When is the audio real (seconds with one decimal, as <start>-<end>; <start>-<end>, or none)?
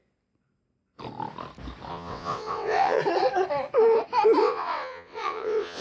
0.0-1.9; 3.0-4.4